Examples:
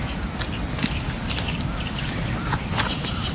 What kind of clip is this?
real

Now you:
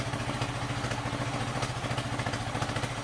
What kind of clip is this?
real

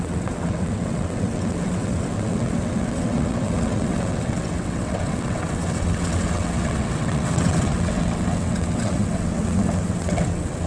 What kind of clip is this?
fake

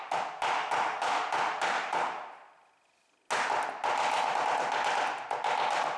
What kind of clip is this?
real